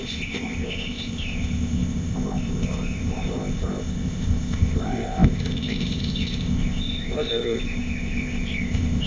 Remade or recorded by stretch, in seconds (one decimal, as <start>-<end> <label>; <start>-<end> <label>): 0.0-9.1 remade